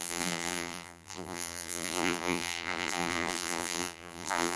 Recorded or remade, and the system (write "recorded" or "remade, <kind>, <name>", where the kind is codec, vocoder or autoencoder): remade, vocoder, BigVGAN v2